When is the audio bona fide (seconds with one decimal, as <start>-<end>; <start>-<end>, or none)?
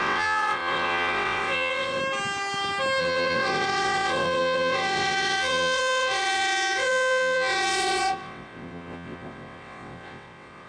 2.0-3.0